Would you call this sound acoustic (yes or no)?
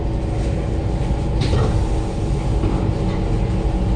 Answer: yes